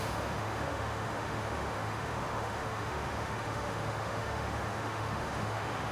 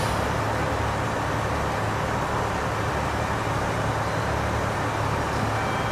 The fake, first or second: first